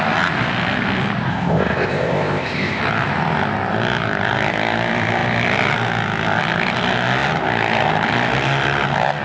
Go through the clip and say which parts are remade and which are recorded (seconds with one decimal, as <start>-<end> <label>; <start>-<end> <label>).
0.0-1.3 recorded; 1.3-2.8 remade; 2.8-9.2 recorded